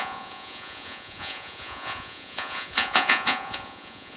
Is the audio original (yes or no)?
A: no